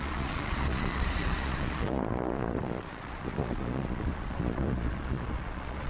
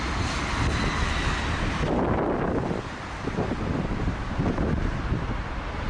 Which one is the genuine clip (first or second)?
second